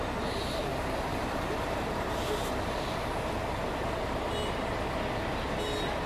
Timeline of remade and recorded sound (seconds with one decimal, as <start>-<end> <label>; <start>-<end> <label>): 0.0-1.1 recorded; 1.1-4.4 remade; 4.4-6.1 recorded